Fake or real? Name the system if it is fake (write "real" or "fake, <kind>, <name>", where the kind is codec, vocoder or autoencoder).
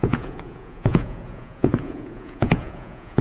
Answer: fake, vocoder, Vocos